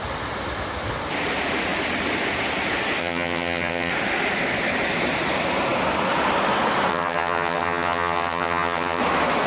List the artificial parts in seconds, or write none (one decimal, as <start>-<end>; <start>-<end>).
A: 3.0-3.9; 6.9-9.0